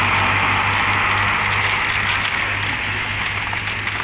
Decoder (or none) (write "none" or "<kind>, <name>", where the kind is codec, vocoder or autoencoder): none